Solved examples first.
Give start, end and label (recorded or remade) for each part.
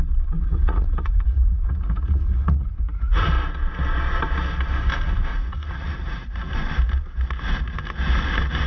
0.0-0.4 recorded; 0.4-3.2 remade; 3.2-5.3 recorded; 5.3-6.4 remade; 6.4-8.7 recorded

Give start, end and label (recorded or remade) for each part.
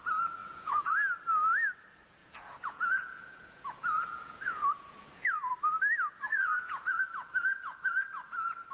0.0-0.4 recorded; 0.4-0.9 remade; 0.9-2.2 recorded; 2.2-5.5 remade; 5.5-6.3 recorded; 6.3-7.0 remade; 7.0-8.7 recorded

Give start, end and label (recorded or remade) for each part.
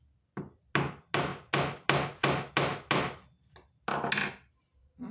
0.0-5.1 recorded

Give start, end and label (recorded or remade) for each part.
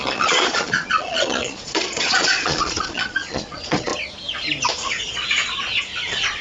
0.0-3.9 remade; 3.9-4.9 recorded; 4.9-5.9 remade; 5.9-6.4 recorded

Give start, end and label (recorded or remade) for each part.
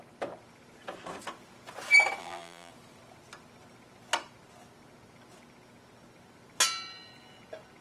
0.0-2.2 recorded; 2.2-2.7 remade; 2.7-7.8 recorded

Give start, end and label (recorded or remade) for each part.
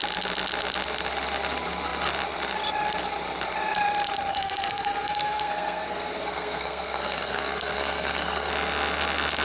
0.0-4.3 recorded; 4.3-8.5 remade; 8.5-9.4 recorded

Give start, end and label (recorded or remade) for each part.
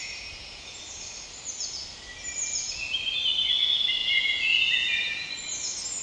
0.0-0.8 remade; 0.8-4.0 recorded; 4.0-5.3 remade; 5.3-6.0 recorded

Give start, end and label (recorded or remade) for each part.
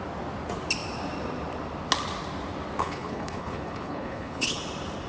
0.0-2.8 recorded; 2.8-4.6 remade; 4.6-5.1 recorded